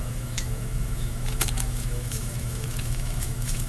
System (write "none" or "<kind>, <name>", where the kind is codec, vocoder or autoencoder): autoencoder, DAC-VAE